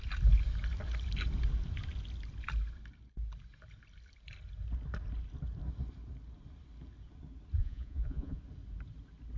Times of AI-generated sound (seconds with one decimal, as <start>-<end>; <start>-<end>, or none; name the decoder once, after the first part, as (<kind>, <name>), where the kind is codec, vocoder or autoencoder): 7.6-8.4 (vocoder, Vocos)